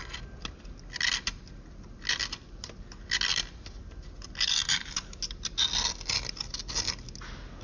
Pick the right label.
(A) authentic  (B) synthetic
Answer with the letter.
A